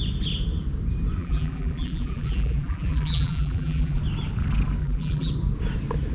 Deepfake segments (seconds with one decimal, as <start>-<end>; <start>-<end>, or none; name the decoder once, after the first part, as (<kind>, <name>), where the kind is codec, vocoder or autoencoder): 1.2-4.0 (vocoder, BigVGAN v2); 4.8-5.3